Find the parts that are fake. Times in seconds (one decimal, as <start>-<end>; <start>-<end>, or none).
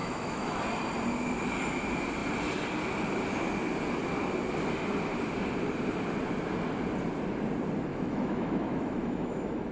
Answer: 0.0-0.6; 7.9-9.7